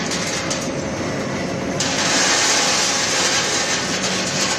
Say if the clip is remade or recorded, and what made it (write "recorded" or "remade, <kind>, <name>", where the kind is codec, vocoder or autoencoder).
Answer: recorded